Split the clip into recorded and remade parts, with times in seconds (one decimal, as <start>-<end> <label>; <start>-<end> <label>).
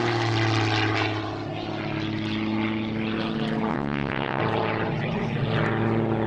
0.0-3.7 recorded; 3.7-4.4 remade; 4.4-6.3 recorded